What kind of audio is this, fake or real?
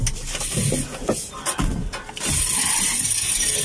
real